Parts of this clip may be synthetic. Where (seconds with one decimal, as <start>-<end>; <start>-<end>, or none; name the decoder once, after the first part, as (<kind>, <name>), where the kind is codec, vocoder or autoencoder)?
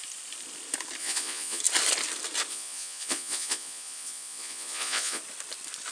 1.0-1.6 (vocoder, Vocos); 2.5-5.2